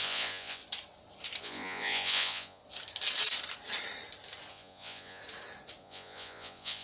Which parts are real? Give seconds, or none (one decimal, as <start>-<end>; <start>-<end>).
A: 0.6-1.4; 2.6-4.5; 5.2-5.8